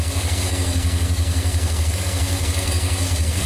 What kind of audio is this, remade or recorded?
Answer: remade